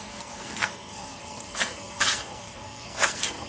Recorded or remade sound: remade